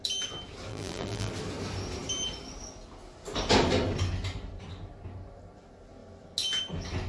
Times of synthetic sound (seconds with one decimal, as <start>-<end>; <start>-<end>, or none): 0.7-1.3